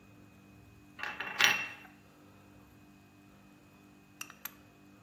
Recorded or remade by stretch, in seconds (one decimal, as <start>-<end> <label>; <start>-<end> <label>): 0.0-5.0 recorded